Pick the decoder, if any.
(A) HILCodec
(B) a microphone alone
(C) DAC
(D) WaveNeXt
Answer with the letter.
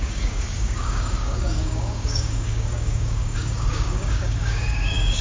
C